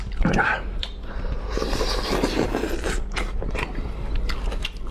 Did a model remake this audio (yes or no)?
yes